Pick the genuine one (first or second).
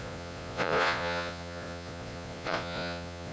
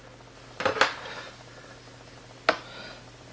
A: second